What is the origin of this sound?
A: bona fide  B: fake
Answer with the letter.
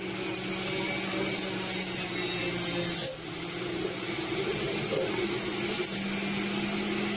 A